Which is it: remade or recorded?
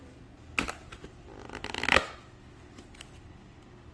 recorded